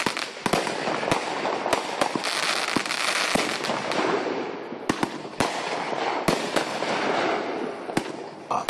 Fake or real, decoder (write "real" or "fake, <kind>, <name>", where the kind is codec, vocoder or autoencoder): real